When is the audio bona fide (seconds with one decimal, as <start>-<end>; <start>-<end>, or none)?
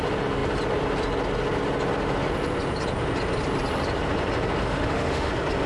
0.0-4.6; 5.3-5.7